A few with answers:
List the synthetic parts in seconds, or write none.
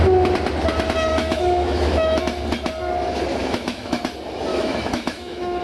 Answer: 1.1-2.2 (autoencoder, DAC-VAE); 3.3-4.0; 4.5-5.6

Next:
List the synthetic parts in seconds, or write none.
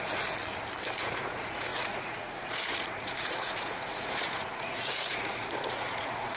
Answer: 0.0-0.4 (vocoder, Vocos); 1.0-6.4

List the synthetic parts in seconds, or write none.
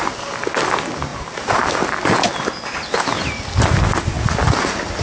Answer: none